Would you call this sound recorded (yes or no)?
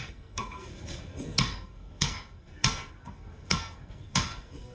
no